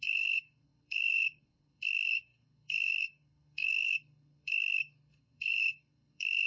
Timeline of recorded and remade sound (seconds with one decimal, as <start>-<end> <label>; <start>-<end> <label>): 0.0-6.5 remade